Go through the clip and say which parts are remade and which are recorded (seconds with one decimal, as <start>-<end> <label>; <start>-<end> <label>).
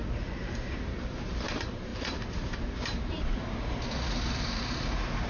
0.0-5.3 remade